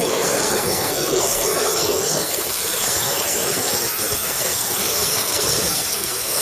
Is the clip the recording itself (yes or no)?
no